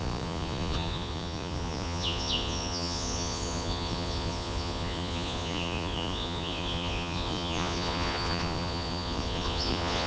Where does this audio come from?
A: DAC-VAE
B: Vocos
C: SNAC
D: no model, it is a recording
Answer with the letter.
B